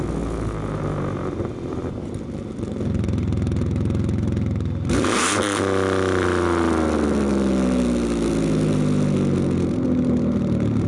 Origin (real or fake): real